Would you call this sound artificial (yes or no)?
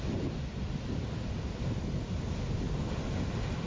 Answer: no